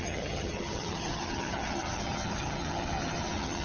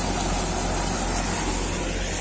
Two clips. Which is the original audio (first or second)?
second